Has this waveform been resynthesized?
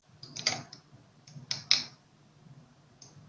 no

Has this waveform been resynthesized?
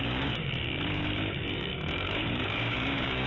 yes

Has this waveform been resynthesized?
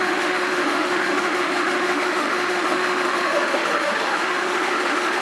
yes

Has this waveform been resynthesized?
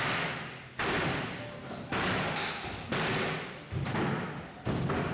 no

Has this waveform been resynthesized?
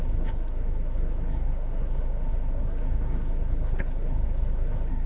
yes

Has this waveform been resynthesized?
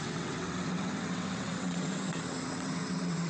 yes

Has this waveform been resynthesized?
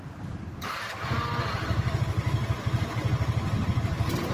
no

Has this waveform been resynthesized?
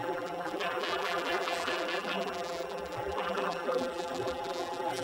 yes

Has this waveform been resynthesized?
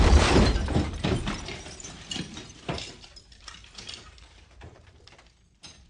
yes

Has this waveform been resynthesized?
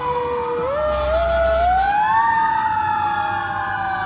no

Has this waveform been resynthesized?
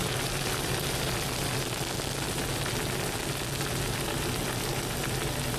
no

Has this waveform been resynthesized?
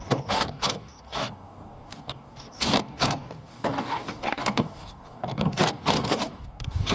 yes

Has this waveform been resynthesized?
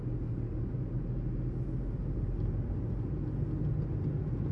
no